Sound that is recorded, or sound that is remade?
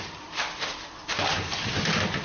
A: remade